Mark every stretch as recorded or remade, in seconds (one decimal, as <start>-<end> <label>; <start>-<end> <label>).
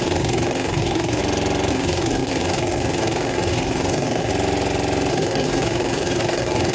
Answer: 0.0-1.2 remade; 1.2-1.7 recorded; 1.7-4.3 remade; 4.3-5.1 recorded; 5.1-6.7 remade